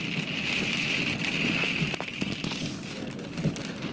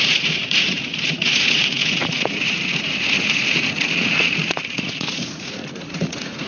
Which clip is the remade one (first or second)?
second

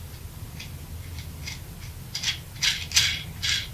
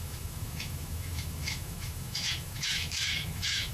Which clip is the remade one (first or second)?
second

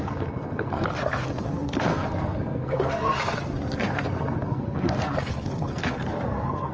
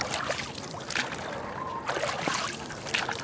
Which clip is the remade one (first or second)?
first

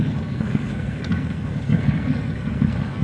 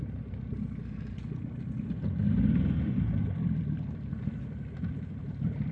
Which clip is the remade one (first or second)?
first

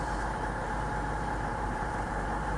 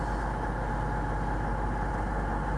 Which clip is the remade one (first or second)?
first